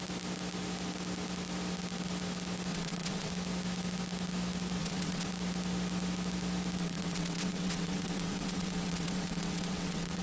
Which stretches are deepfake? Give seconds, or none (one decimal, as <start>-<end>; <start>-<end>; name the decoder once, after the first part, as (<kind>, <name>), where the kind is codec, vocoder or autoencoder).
2.7-3.3 (vocoder, WaveNeXt); 4.8-5.3; 6.8-10.2